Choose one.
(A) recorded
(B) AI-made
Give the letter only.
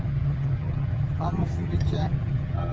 B